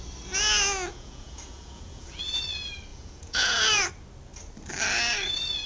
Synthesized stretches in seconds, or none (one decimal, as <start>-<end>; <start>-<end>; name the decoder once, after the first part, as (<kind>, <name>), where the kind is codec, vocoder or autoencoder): 0.9-2.4 (vocoder, Vocos); 2.9-3.9